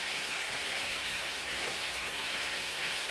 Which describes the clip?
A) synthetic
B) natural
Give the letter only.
A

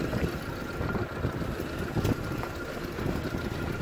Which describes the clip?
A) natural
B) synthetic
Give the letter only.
A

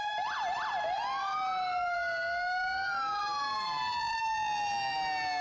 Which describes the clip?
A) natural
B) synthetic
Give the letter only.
A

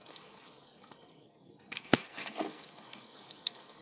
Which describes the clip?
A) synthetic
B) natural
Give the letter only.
A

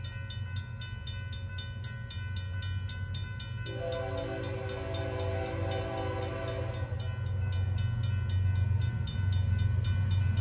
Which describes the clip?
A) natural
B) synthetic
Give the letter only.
A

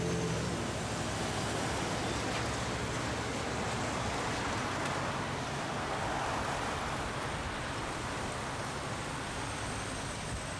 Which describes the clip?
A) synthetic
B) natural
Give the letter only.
B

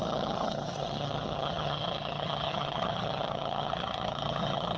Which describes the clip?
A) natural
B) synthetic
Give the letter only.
B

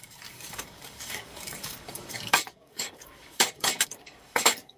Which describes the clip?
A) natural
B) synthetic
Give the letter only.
B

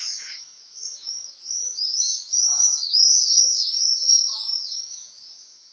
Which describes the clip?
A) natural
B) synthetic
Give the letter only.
B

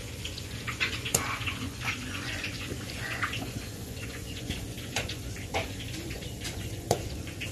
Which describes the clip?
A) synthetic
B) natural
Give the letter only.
A